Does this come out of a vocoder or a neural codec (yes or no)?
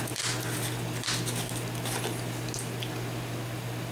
no